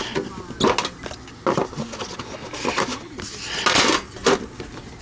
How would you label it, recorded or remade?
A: recorded